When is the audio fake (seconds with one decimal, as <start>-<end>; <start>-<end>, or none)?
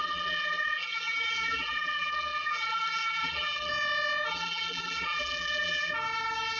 0.0-3.7; 4.3-5.9